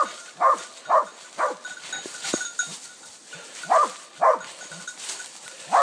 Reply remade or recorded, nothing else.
recorded